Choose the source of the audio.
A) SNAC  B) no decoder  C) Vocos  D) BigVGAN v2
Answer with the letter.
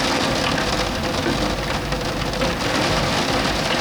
D